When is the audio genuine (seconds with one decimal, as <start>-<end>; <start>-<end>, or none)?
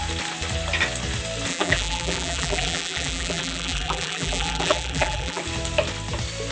0.0-1.5; 5.4-6.5